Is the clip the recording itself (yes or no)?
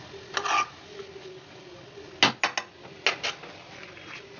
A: yes